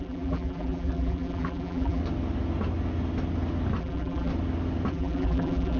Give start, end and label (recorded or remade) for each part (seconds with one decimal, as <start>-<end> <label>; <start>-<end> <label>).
0.0-2.0 remade; 2.0-3.8 recorded; 3.8-4.3 remade; 4.3-4.9 recorded; 4.9-5.8 remade